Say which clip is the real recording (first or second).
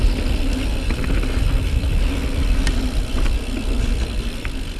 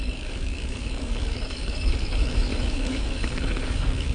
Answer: first